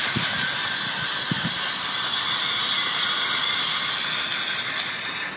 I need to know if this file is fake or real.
real